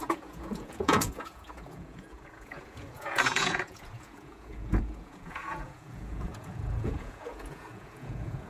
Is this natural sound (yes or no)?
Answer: no